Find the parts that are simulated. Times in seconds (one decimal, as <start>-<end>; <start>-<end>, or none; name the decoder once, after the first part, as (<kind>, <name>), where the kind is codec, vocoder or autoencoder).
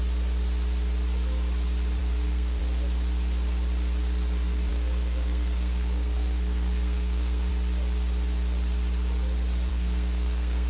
2.0-2.6 (codec, SNAC); 4.7-7.5; 9.7-10.7